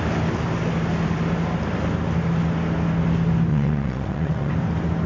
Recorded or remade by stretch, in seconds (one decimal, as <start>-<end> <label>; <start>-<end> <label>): 0.0-3.5 recorded; 3.5-4.5 remade; 4.5-5.1 recorded